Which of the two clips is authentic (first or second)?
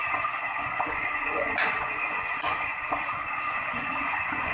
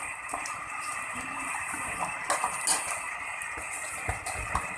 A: second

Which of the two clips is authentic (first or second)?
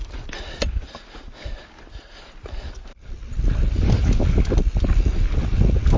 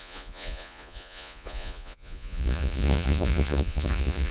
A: first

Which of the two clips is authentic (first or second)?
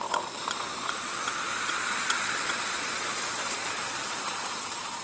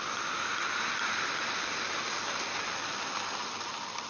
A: second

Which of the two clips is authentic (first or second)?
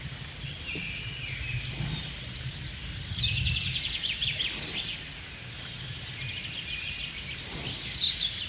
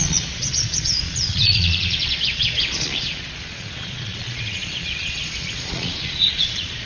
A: first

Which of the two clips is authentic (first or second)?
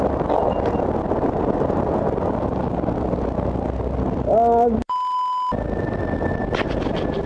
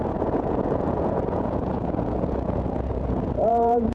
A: first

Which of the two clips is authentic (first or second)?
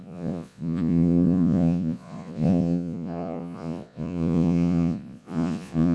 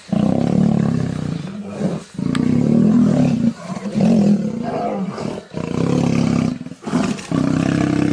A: second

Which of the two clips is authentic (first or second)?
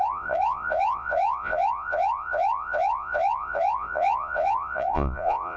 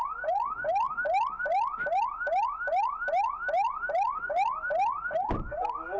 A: second